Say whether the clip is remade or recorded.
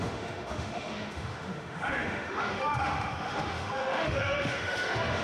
remade